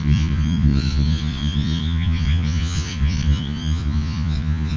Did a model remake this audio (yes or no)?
yes